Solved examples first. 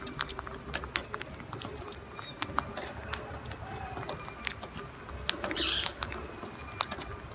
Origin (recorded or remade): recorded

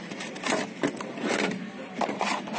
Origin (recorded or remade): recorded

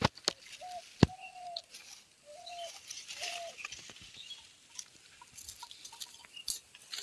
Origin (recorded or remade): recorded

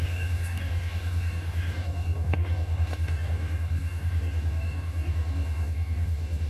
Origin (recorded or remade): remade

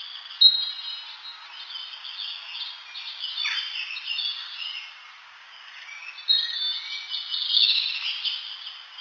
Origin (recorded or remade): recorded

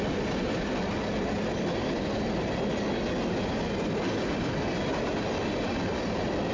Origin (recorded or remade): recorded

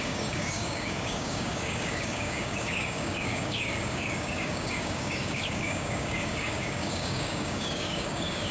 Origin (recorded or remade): remade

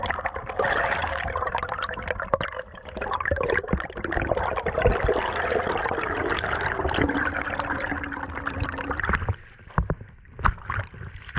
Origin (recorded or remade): recorded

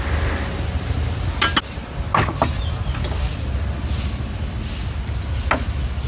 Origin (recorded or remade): recorded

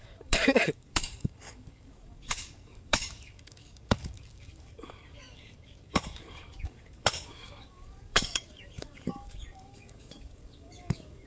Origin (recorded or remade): remade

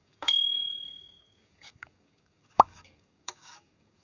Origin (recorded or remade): remade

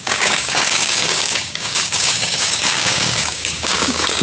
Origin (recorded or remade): remade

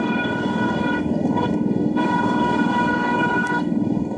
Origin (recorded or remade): remade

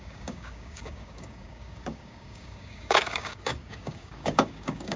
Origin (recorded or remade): remade